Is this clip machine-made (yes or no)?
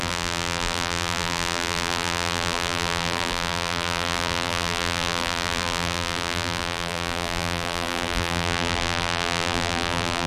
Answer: yes